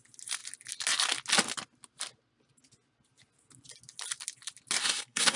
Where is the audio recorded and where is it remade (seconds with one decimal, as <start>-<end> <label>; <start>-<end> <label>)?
0.0-4.8 recorded; 4.8-5.4 remade